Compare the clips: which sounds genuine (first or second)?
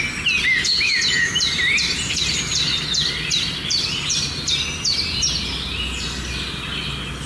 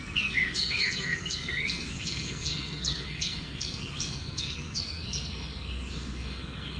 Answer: first